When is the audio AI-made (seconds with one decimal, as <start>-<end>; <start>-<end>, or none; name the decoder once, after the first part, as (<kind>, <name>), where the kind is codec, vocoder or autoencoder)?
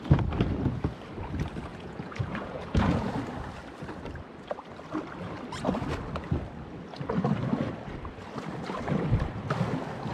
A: 1.7-3.1 (vocoder, Vocos)